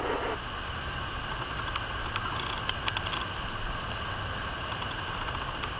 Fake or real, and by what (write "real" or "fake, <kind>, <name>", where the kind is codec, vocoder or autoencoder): real